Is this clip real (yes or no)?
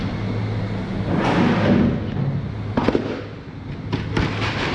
yes